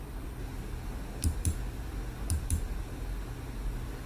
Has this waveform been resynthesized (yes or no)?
no